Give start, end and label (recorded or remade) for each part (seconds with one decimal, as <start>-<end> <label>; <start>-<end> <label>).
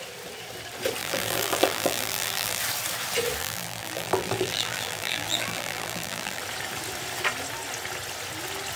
0.0-1.0 recorded; 1.0-2.6 remade; 2.6-3.4 recorded; 3.4-6.4 remade; 6.4-8.8 recorded